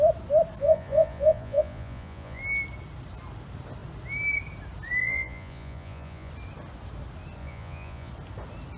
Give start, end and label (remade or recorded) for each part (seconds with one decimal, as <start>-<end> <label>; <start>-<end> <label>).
0.0-0.6 recorded; 0.6-2.4 remade; 2.4-5.0 recorded; 5.0-6.3 remade; 6.3-7.4 recorded; 7.4-8.1 remade; 8.1-8.8 recorded